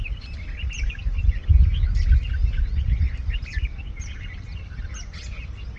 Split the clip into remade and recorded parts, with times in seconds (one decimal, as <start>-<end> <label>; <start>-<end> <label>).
0.0-5.8 recorded